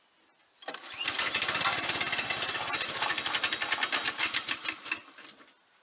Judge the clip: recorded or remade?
recorded